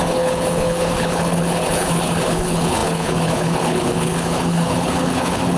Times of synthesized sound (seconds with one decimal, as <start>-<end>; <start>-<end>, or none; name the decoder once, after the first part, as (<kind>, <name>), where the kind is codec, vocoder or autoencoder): 0.0-5.6 (codec, HILCodec)